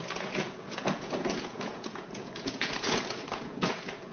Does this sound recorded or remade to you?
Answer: remade